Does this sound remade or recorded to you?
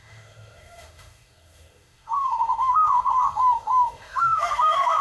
remade